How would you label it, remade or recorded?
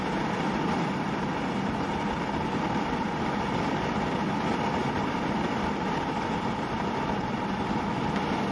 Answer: recorded